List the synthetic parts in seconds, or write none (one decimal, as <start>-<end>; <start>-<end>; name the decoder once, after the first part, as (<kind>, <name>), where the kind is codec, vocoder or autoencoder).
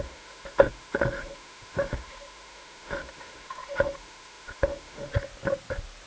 0.0-5.1 (autoencoder, DAC-VAE)